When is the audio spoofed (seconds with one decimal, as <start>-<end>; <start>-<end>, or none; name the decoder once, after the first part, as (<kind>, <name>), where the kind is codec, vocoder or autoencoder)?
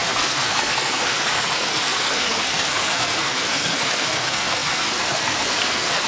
0.0-6.1 (codec, SNAC)